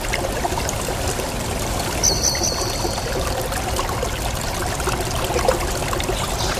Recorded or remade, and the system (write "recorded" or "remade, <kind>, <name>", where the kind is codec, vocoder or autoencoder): recorded